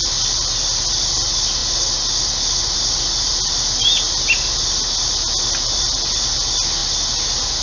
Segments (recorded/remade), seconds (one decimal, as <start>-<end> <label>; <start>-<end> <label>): 0.0-7.6 recorded